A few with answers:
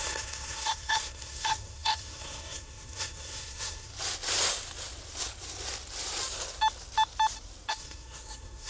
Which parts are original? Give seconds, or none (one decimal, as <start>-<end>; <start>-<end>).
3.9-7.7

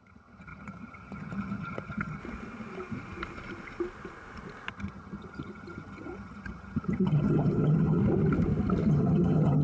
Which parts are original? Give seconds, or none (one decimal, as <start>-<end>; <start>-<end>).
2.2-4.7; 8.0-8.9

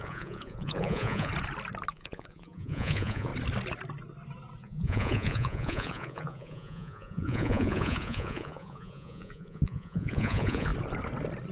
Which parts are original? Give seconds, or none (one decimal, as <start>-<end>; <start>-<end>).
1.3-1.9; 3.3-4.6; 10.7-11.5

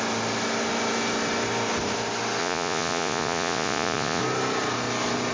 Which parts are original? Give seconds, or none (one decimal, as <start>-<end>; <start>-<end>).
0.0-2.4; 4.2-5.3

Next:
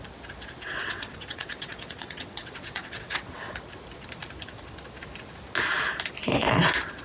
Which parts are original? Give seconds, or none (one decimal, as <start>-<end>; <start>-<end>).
0.0-0.8; 3.4-7.0